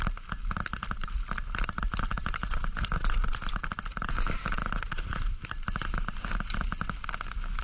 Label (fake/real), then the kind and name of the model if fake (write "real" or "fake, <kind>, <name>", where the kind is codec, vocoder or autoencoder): real